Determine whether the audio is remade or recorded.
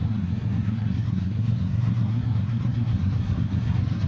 remade